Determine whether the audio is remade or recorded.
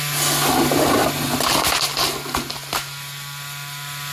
recorded